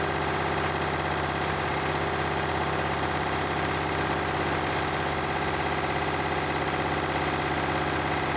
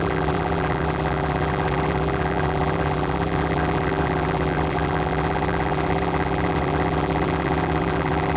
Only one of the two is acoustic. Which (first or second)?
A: first